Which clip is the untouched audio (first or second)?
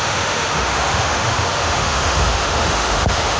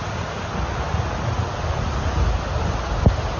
second